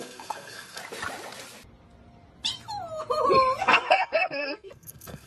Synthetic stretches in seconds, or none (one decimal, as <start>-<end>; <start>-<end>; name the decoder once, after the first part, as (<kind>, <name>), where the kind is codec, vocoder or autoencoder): 0.0-0.8 (codec, SNAC); 3.6-5.3